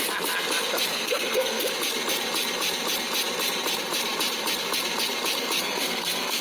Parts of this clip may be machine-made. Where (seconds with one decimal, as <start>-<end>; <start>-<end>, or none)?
0.9-1.7; 5.6-6.4